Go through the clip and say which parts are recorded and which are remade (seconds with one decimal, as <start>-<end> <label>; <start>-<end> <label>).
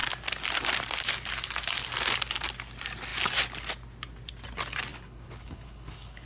0.0-4.9 recorded; 4.9-6.3 remade